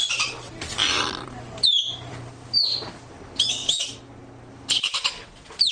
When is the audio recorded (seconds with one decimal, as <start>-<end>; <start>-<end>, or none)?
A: 0.0-0.8; 2.1-5.7

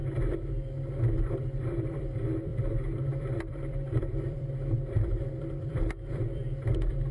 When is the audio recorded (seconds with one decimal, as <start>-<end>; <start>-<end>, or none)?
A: 0.0-1.6

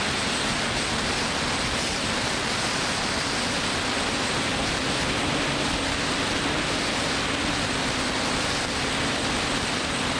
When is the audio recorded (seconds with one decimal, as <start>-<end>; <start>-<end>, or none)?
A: 0.0-1.9; 2.5-10.2

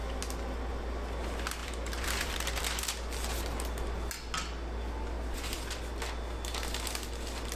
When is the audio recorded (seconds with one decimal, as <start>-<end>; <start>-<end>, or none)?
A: 0.0-1.6; 2.6-7.6

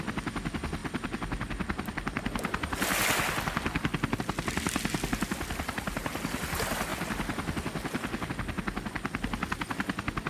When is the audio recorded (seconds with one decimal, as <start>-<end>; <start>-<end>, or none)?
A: 0.0-10.3

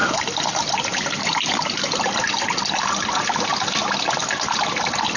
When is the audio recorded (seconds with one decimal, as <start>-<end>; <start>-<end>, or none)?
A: 0.0-5.2

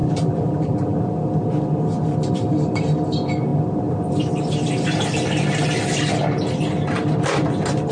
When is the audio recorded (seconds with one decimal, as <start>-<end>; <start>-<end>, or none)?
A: 1.0-7.9

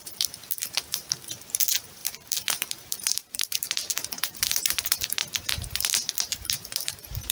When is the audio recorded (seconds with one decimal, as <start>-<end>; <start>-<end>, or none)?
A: none